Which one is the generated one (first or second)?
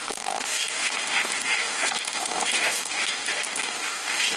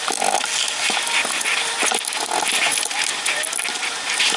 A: first